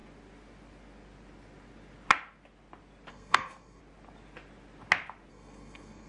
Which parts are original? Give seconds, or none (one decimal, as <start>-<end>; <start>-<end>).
0.0-3.1; 3.8-5.3